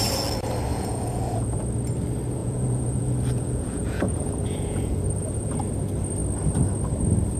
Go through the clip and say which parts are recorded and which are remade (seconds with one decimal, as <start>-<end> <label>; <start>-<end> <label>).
0.0-0.7 recorded; 0.7-1.6 remade; 1.6-2.4 recorded; 2.4-5.5 remade; 5.5-7.4 recorded